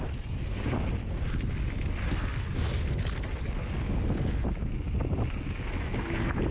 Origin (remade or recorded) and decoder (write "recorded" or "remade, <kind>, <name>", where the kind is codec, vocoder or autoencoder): recorded